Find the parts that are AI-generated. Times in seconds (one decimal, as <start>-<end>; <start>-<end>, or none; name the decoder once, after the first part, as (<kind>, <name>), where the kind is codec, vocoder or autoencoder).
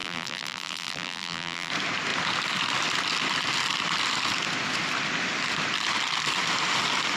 0.0-1.7 (vocoder, BigVGAN v2)